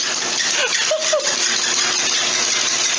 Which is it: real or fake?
real